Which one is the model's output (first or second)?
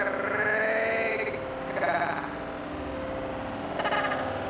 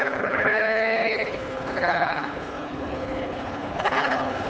second